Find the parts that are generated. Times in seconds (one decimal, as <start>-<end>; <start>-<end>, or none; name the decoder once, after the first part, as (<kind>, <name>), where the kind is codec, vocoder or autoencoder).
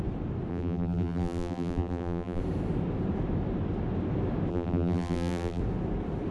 0.5-2.4 (vocoder, BigVGAN v2); 4.5-5.6